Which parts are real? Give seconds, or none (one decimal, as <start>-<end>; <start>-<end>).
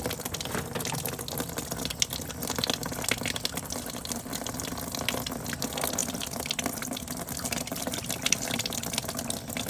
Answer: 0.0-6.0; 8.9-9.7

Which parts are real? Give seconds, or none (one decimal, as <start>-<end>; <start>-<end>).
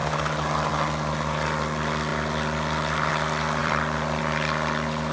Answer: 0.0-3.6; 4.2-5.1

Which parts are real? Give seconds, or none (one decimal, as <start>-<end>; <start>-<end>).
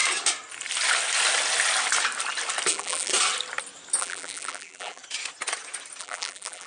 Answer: 0.0-2.7; 3.1-4.0; 5.0-6.0